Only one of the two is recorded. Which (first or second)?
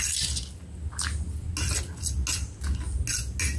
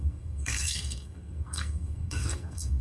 first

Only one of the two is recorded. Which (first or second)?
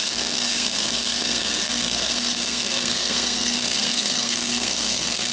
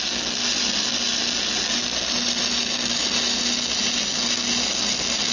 second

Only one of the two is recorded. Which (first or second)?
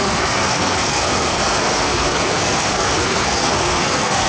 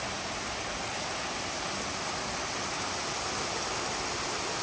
second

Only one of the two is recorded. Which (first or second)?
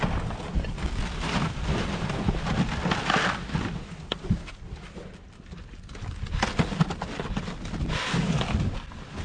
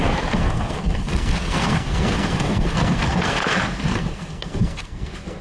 first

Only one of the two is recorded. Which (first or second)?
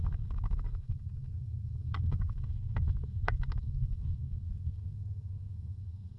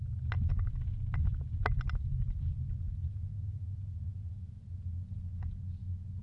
second